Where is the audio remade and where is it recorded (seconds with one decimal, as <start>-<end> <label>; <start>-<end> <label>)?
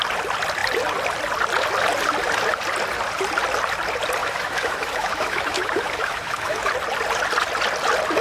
0.0-4.2 recorded; 4.2-6.7 remade; 6.7-8.2 recorded